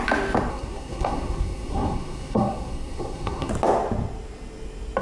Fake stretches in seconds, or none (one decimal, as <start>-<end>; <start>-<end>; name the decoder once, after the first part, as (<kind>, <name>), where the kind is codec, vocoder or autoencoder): 0.5-3.5 (codec, SNAC)